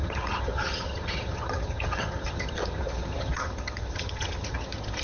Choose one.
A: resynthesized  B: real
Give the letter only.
A